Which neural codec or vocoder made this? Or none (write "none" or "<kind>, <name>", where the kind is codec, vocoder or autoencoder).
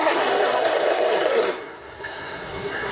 codec, SNAC